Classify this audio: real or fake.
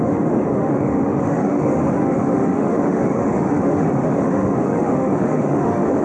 fake